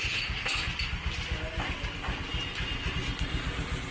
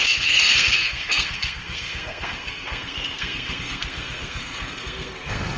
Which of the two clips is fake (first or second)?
second